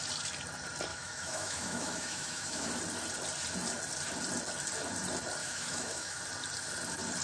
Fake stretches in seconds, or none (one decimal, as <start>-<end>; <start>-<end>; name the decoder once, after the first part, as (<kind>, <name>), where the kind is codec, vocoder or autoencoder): 0.9-2.7 (autoencoder, DAC-VAE); 5.4-6.2

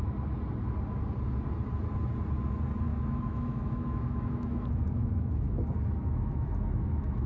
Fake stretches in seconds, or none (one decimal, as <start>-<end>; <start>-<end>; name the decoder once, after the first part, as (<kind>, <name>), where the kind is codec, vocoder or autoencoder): 2.9-7.3 (autoencoder, DAC-VAE)

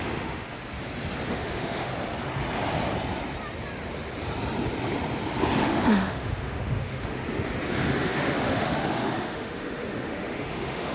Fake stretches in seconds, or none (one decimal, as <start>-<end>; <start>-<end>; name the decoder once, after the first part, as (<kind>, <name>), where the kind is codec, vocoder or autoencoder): 0.0-0.6 (autoencoder, DAC-VAE); 1.3-1.9; 5.6-7.2; 7.7-10.9

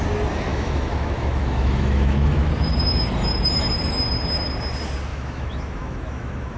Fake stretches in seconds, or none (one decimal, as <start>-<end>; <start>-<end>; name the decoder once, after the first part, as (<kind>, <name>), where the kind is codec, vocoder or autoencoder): 0.5-2.5 (autoencoder, DAC-VAE); 5.1-6.6